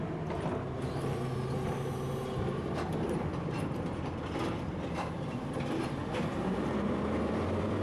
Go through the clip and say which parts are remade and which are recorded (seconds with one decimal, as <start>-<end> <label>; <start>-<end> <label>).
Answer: 0.0-4.7 recorded; 4.7-7.8 remade